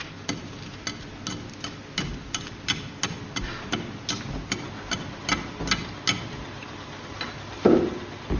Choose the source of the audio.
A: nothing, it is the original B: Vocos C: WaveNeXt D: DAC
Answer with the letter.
A